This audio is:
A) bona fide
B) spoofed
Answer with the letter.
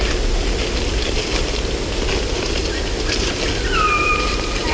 A